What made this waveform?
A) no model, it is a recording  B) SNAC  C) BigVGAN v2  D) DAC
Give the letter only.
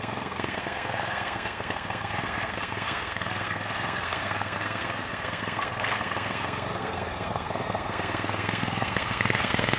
B